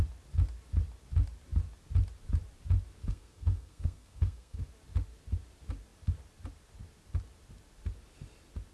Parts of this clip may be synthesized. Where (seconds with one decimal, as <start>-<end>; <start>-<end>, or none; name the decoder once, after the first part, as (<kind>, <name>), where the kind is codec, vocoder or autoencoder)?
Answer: 3.1-4.6 (codec, SNAC)